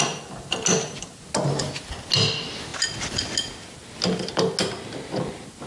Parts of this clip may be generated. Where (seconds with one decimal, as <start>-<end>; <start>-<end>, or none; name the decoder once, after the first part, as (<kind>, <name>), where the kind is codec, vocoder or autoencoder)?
none